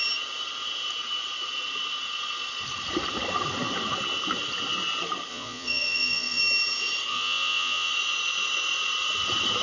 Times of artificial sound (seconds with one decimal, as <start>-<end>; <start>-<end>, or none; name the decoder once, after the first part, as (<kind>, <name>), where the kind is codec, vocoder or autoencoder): 5.3-6.4 (vocoder, Vocos); 7.1-7.9